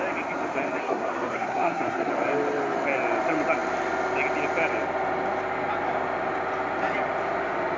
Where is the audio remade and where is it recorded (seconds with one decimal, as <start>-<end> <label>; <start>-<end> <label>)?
0.0-0.8 recorded; 0.8-2.1 remade; 2.1-7.8 recorded